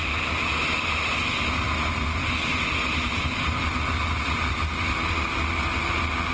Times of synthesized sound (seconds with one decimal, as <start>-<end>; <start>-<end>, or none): none